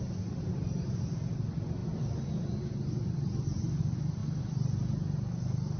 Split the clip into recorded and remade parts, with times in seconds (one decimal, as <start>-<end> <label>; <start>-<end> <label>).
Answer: 0.0-1.8 recorded; 1.8-2.7 remade; 2.7-4.2 recorded; 4.2-5.8 remade

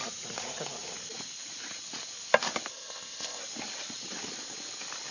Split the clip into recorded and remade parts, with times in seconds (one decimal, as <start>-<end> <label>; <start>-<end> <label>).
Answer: 0.0-2.7 recorded; 2.7-3.4 remade; 3.4-5.1 recorded

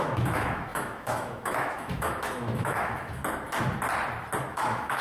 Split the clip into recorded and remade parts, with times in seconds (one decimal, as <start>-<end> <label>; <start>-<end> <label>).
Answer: 0.0-3.2 remade; 3.2-4.5 recorded; 4.5-5.0 remade

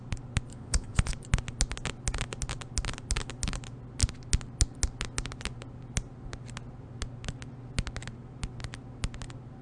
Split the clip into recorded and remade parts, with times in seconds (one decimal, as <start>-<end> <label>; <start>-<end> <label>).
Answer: 0.0-0.5 recorded; 0.5-1.1 remade; 1.1-9.6 recorded

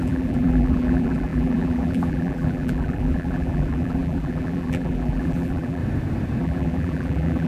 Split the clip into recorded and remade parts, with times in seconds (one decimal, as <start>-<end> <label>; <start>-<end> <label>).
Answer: 0.0-5.8 remade; 5.8-6.4 recorded; 6.4-7.5 remade

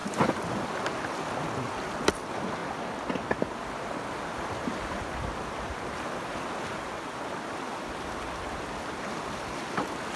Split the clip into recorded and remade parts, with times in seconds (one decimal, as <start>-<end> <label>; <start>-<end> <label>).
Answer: 0.0-10.2 recorded